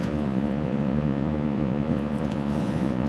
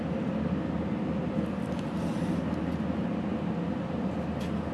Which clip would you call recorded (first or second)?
second